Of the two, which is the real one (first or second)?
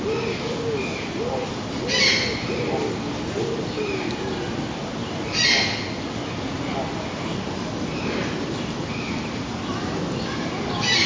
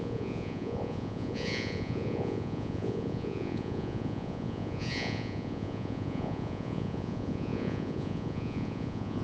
first